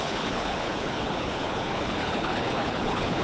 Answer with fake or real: fake